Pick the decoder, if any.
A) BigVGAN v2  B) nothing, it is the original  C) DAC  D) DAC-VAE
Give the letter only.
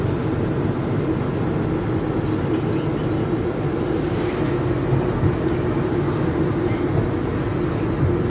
B